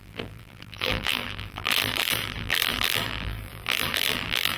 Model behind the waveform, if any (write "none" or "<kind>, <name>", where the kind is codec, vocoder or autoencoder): vocoder, BigVGAN v2